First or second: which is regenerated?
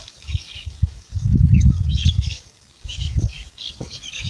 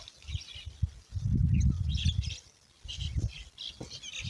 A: first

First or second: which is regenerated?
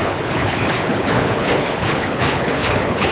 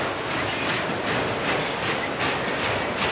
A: first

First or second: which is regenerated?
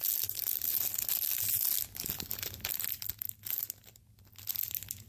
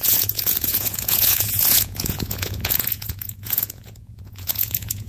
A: second